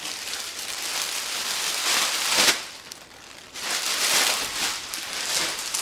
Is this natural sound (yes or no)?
yes